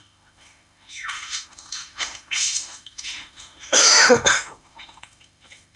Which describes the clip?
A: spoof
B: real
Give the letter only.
A